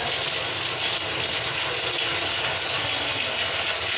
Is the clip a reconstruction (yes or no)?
no